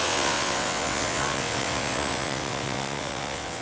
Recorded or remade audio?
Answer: remade